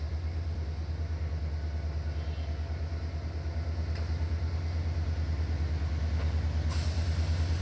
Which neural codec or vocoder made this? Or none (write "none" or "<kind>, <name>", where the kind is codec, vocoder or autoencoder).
none